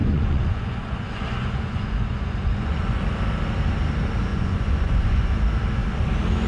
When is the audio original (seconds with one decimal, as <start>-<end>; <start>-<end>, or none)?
3.0-4.3; 5.3-6.5